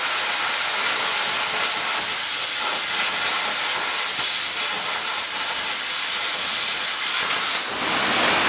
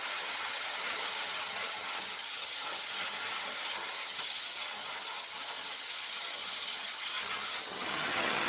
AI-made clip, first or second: second